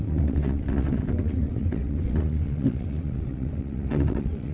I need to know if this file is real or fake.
fake